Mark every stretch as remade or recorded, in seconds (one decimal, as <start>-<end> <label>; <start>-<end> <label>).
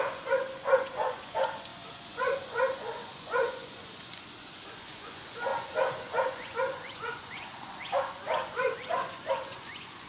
0.0-10.1 remade